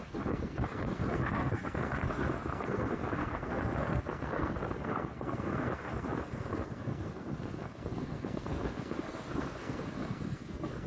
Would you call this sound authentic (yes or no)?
no